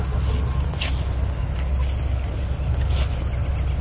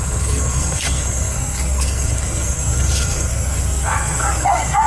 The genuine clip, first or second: first